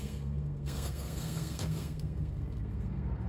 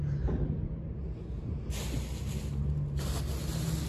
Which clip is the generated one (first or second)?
first